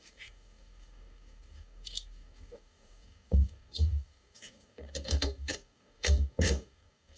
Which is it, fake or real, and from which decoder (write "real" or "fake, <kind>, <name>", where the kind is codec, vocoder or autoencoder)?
fake, codec, DAC